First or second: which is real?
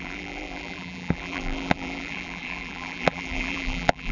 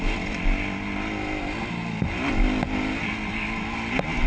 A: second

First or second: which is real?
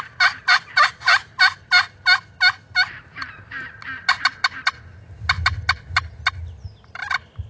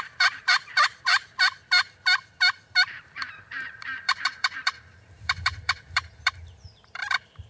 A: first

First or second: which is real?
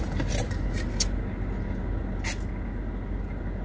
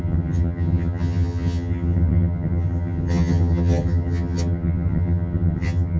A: first